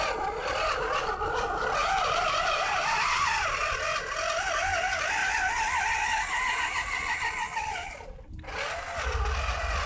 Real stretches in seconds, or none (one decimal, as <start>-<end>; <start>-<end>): 0.0-1.8; 3.6-9.9

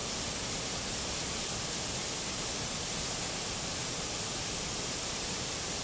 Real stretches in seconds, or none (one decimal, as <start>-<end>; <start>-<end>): none

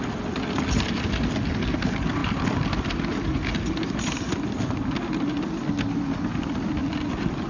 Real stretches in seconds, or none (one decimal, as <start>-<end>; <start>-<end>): 0.0-2.2; 4.9-6.8

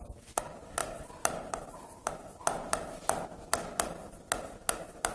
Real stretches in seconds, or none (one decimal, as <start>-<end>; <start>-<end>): 0.0-0.8; 2.1-5.1

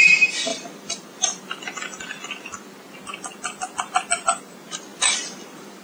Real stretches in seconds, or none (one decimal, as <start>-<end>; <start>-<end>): 0.0-0.5; 1.6-4.9